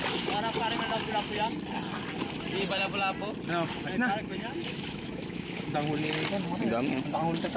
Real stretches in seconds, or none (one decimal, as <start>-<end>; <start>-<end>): 0.0-4.3; 5.7-7.6